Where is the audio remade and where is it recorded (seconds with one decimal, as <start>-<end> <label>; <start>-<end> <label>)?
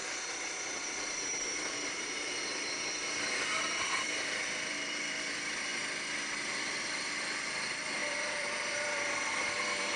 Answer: 0.0-5.7 remade; 5.7-6.5 recorded; 6.5-10.0 remade